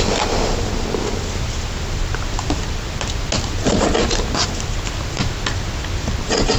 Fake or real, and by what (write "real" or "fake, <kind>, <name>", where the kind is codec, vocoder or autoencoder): real